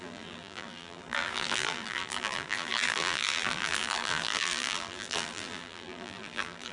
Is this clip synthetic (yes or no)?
yes